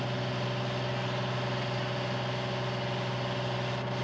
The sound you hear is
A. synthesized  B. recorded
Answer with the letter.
B